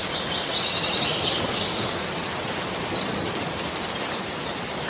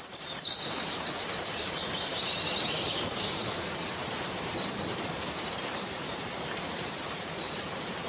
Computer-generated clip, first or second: second